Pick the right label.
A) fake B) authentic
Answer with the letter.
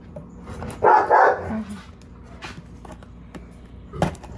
B